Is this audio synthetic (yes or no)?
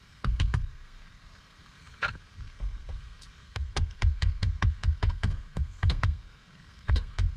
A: yes